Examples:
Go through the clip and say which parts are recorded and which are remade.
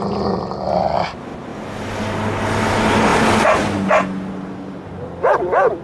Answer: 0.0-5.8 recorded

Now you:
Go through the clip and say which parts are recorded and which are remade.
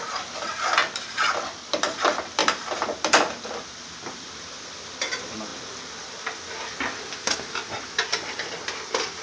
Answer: 0.0-0.8 remade; 0.8-2.0 recorded; 2.0-5.5 remade; 5.5-7.2 recorded; 7.2-9.2 remade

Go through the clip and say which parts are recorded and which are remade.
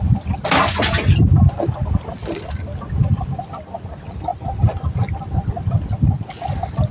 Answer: 0.0-6.9 recorded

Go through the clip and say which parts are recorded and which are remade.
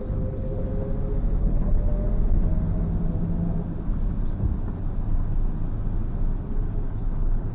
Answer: 0.0-0.7 remade; 0.7-1.4 recorded; 1.4-1.9 remade; 1.9-6.4 recorded; 6.4-7.5 remade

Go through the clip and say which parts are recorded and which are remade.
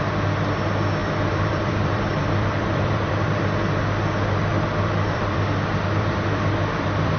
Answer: 0.0-1.0 recorded; 1.0-3.4 remade; 3.4-4.5 recorded; 4.5-7.2 remade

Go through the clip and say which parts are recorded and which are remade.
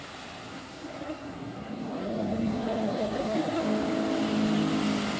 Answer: 0.0-0.5 recorded; 0.5-3.6 remade; 3.6-5.2 recorded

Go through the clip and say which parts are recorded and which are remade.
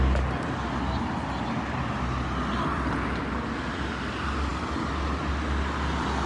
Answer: 0.0-6.3 recorded